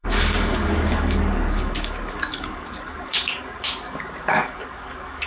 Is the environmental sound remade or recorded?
remade